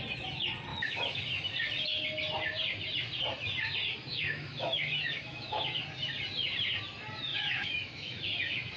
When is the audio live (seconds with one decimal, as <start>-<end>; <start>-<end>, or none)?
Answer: 0.0-0.7; 1.2-4.1; 5.8-7.3